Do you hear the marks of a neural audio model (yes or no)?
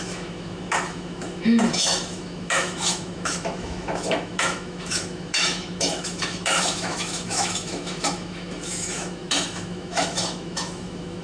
yes